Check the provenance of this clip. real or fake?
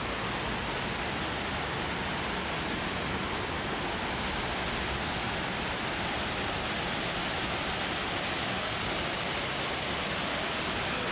real